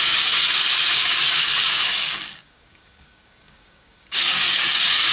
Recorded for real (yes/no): no